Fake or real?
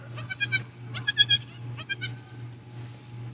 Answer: real